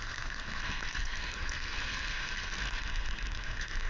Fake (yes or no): yes